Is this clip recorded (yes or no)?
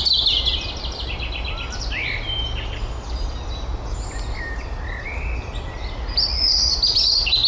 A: yes